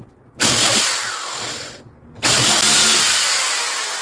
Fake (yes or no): no